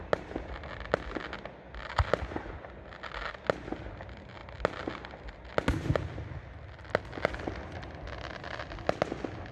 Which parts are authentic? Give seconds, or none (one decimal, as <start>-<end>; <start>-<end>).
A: 0.0-9.5